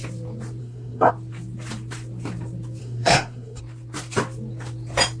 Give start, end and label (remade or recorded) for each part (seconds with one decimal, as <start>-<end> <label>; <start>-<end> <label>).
0.0-0.6 recorded; 0.6-1.1 remade; 1.1-2.8 recorded; 2.8-3.6 remade; 3.6-5.2 recorded